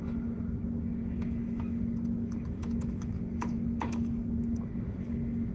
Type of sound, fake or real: fake